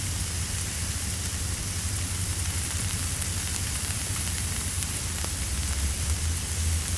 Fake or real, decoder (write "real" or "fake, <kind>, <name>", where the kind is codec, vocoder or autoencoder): fake, vocoder, BigVGAN v2